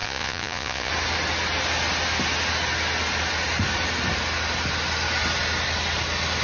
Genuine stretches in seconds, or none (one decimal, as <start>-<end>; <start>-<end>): 0.9-6.4